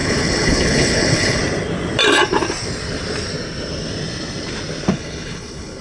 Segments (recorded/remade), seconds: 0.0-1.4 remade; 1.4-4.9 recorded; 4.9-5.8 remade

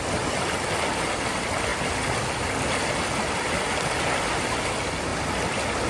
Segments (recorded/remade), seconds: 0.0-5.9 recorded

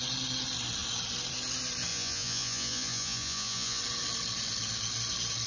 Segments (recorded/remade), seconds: 0.0-1.9 recorded; 1.9-3.8 remade; 3.8-5.5 recorded